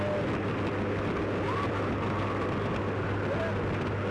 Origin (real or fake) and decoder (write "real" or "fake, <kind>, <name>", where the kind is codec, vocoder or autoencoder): real